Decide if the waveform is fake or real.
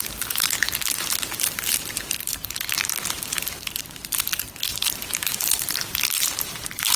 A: fake